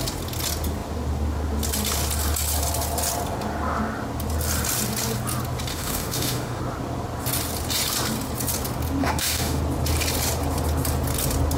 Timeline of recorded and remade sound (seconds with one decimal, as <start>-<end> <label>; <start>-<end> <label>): 0.0-5.7 recorded; 5.7-6.6 remade; 6.6-9.0 recorded; 9.0-9.6 remade; 9.6-11.6 recorded